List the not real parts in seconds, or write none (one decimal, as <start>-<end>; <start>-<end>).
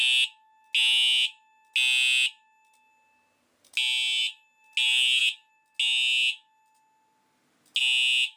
none